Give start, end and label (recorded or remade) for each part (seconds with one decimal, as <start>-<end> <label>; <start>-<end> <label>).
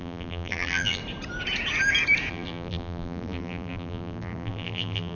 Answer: 0.0-1.0 remade; 1.0-2.3 recorded; 2.3-5.1 remade